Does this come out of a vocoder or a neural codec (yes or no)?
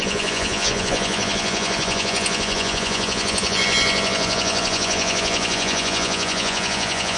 yes